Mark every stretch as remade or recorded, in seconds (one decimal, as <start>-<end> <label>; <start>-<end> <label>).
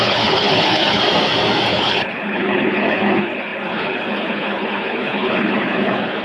0.0-1.0 remade; 1.0-1.7 recorded; 1.7-6.2 remade